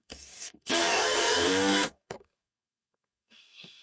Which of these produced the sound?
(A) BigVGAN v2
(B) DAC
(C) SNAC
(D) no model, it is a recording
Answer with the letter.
B